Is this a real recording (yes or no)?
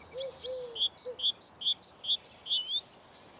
yes